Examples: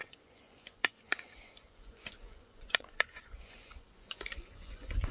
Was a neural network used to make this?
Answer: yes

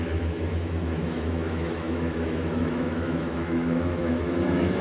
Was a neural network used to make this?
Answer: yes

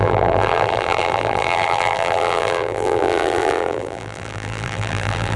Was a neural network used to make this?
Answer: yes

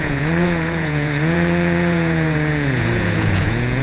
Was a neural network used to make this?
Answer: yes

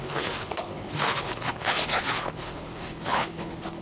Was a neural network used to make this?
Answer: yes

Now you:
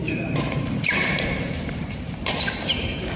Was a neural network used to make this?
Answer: yes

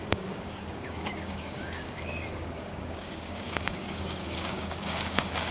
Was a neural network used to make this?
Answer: yes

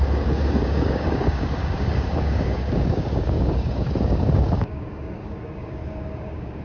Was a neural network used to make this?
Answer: yes